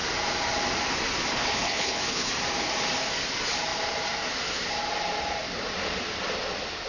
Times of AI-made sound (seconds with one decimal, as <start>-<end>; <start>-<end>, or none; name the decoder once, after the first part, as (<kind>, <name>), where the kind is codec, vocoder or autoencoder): 1.3-2.3 (codec, HILCodec)